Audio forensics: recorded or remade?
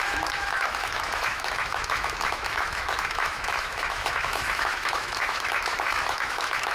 remade